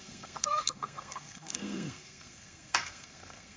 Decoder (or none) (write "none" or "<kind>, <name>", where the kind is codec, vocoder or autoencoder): codec, SNAC